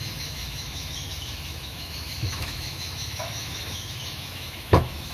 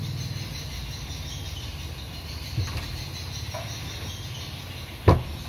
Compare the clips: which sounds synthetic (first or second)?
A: first